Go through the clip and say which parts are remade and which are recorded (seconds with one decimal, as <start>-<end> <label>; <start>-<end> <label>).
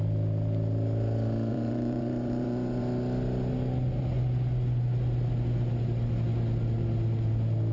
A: 0.0-1.5 recorded; 1.5-2.8 remade; 2.8-7.7 recorded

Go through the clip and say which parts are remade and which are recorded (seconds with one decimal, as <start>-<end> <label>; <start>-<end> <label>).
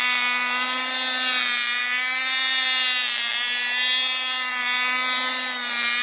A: 0.0-6.0 recorded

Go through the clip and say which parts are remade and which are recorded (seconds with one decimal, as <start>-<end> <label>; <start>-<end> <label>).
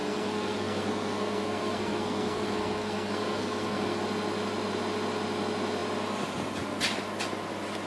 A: 0.0-4.0 remade; 4.0-7.9 recorded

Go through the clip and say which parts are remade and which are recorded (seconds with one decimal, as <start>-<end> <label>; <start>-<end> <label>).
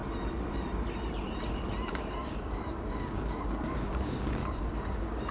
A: 0.0-1.9 recorded; 1.9-5.3 remade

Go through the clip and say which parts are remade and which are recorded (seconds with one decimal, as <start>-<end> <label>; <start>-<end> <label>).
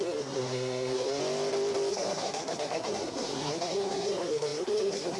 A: 0.0-1.2 remade; 1.2-1.9 recorded; 1.9-5.2 remade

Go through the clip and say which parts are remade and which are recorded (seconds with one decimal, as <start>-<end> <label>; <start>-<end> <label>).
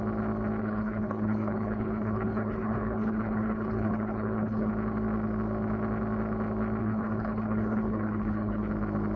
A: 0.0-0.6 recorded; 0.6-4.7 remade; 4.7-6.8 recorded; 6.8-8.7 remade; 8.7-9.2 recorded